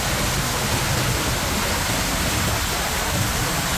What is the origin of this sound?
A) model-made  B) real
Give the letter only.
B